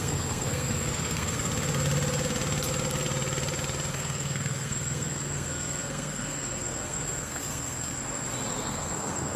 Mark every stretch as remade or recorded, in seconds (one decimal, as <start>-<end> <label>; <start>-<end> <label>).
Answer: 0.0-1.5 remade; 1.5-3.9 recorded; 3.9-7.9 remade; 7.9-8.5 recorded; 8.5-9.4 remade